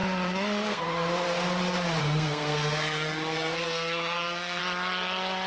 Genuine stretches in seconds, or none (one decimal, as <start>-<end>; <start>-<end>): 0.8-2.0; 4.6-5.5

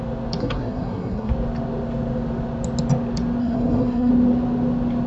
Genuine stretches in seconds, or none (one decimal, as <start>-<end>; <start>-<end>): 0.0-0.4; 1.3-3.4; 4.1-5.1

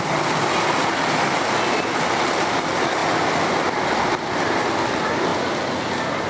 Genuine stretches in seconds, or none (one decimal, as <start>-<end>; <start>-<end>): 0.0-6.3

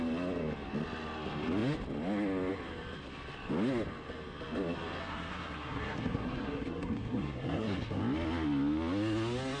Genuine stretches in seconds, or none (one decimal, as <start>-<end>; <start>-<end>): 0.0-5.0; 8.0-9.6

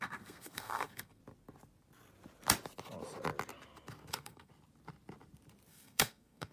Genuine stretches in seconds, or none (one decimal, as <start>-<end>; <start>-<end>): 1.2-4.1; 4.5-5.7

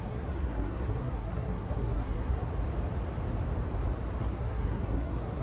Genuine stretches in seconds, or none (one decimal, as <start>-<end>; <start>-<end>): 2.5-4.2

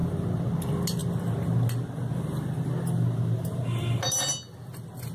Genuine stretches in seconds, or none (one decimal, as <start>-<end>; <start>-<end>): 0.0-5.1

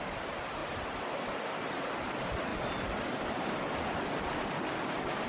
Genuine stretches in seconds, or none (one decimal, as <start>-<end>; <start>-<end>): 0.0-5.3